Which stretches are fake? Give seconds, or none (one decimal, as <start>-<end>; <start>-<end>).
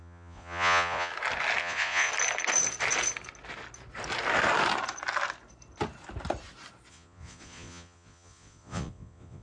0.0-1.1; 1.6-2.1; 6.9-9.4